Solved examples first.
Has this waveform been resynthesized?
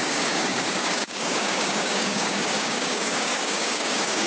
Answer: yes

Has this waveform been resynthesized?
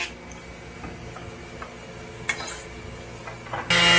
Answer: no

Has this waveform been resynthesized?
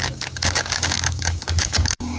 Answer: yes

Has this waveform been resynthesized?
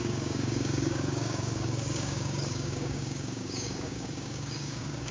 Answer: yes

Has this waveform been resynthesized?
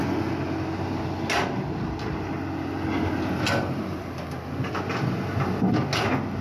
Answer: no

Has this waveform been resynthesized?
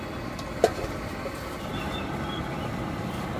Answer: no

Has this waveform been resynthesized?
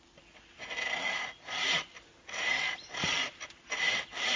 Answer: no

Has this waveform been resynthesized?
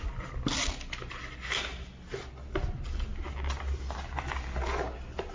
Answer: no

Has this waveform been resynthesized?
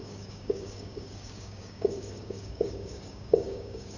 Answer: yes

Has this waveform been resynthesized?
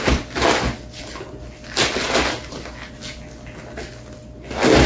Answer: no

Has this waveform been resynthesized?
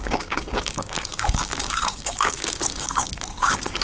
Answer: yes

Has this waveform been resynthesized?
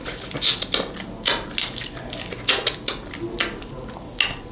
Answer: no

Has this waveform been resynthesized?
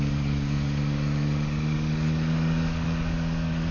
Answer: yes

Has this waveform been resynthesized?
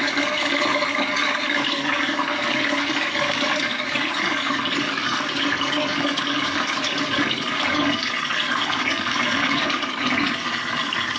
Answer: yes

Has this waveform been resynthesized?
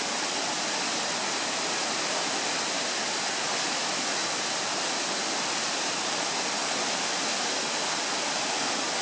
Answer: no